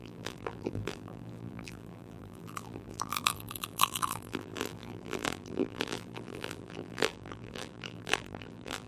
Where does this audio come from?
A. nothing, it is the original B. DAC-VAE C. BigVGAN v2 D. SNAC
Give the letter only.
C